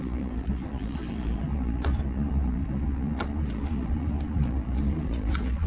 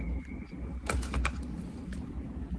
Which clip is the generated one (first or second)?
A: first